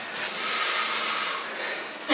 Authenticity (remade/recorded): recorded